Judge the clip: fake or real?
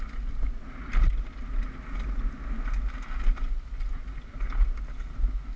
real